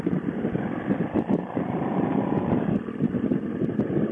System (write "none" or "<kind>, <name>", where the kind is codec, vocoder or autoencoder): vocoder, BigVGAN v2